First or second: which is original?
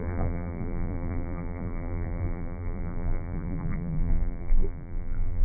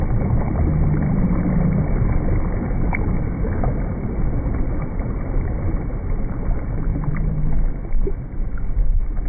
second